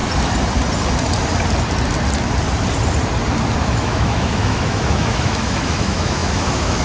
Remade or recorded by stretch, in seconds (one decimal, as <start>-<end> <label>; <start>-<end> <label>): 0.0-3.6 recorded; 3.6-6.8 remade